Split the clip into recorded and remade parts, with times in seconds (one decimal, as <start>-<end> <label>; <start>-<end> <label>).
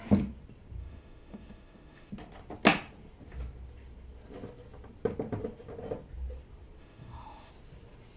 0.0-0.8 recorded; 0.8-2.1 remade; 2.1-6.8 recorded; 6.8-7.5 remade; 7.5-8.2 recorded